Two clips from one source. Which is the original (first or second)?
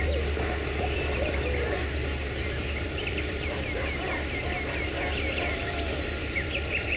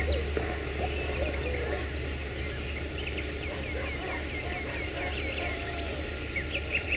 second